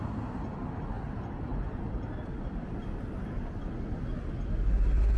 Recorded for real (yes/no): yes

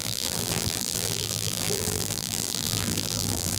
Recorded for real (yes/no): no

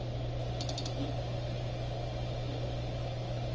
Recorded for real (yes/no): yes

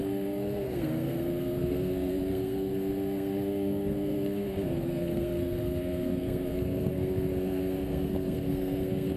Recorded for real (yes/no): no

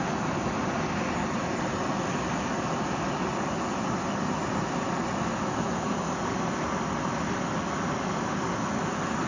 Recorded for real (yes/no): yes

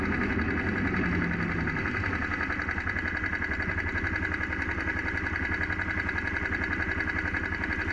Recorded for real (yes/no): yes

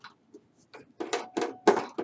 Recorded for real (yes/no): yes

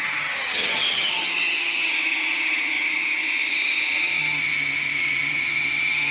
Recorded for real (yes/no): no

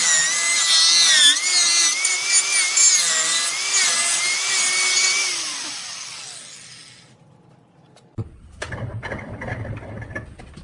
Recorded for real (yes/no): yes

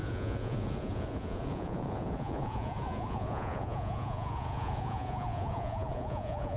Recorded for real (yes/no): no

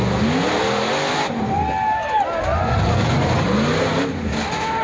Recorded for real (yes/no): yes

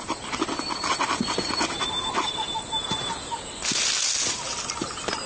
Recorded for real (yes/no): yes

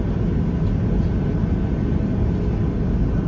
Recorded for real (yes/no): yes